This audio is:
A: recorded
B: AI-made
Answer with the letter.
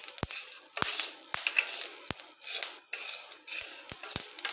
A